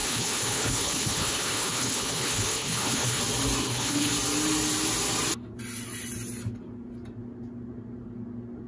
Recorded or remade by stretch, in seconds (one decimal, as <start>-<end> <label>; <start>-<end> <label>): 0.0-3.2 remade; 3.2-3.6 recorded; 3.6-4.1 remade; 4.1-8.7 recorded